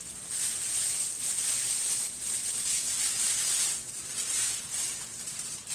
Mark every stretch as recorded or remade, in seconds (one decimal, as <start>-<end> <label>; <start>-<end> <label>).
0.0-0.5 recorded; 0.5-3.9 remade; 3.9-5.7 recorded